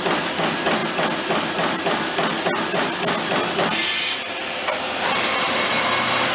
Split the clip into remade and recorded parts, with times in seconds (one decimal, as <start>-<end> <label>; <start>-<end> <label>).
0.0-3.8 recorded; 3.8-5.7 remade; 5.7-6.3 recorded